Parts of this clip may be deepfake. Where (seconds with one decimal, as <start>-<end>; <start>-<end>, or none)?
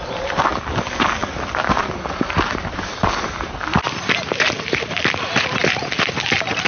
none